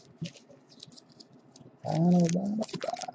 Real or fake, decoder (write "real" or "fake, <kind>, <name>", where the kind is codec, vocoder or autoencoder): real